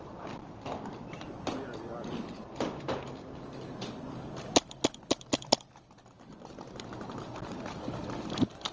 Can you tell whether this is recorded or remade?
remade